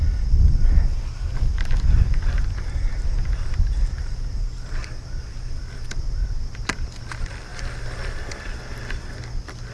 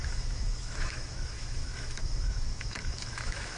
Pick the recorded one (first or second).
first